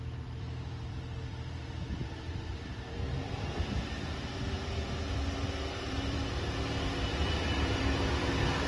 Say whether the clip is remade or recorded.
remade